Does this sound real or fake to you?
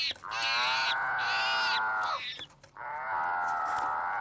real